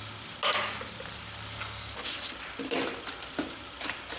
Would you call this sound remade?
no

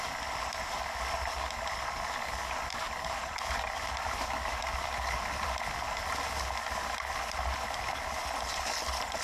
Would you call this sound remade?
no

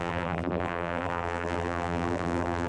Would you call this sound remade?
yes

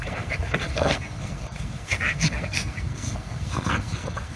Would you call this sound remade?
yes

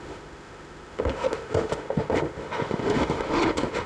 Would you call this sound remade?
yes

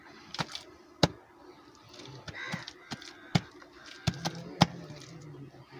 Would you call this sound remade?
no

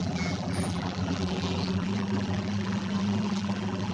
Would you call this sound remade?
yes